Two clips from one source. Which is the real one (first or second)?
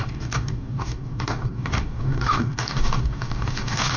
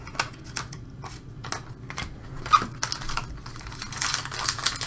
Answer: second